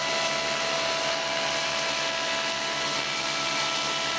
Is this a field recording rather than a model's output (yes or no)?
yes